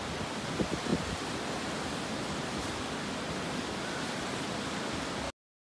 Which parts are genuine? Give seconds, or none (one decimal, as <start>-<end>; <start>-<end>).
0.0-5.8